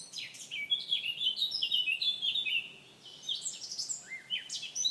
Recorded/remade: recorded